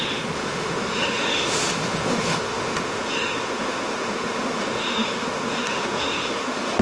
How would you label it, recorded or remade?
remade